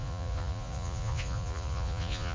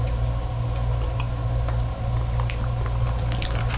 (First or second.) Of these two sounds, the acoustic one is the second